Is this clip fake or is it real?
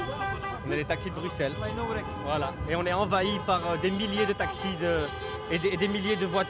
real